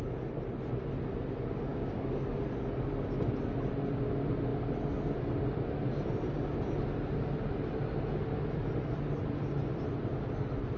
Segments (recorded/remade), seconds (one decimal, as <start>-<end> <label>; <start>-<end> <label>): 0.0-1.7 recorded; 1.7-2.4 remade; 2.4-10.8 recorded